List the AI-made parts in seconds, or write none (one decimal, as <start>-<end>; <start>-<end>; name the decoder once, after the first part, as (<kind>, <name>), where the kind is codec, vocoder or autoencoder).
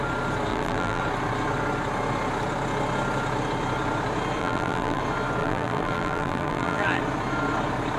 0.5-1.0 (vocoder, BigVGAN v2); 4.4-5.0; 5.4-7.0